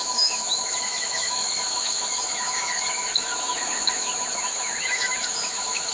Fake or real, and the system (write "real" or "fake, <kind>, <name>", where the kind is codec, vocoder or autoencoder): fake, autoencoder, DAC-VAE